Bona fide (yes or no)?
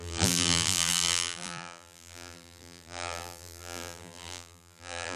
no